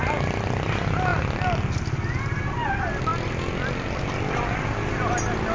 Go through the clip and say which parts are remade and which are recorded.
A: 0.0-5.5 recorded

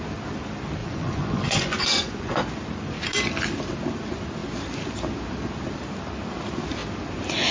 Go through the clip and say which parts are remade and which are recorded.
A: 0.0-0.8 recorded; 0.8-2.4 remade; 2.4-7.5 recorded

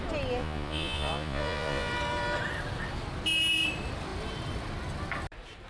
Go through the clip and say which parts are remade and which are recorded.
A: 0.0-0.4 recorded; 0.4-1.9 remade; 1.9-5.7 recorded

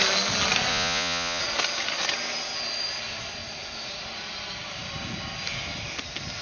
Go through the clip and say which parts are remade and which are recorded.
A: 0.0-0.7 recorded; 0.7-1.4 remade; 1.4-6.4 recorded

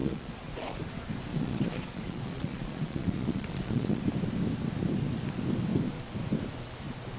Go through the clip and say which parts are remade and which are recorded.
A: 0.0-0.8 remade; 0.8-1.3 recorded; 1.3-4.0 remade; 4.0-7.2 recorded

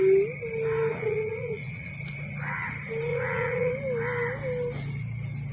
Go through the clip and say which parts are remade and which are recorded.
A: 0.0-0.9 recorded; 0.9-1.9 remade; 1.9-3.1 recorded; 3.1-3.7 remade; 3.7-5.5 recorded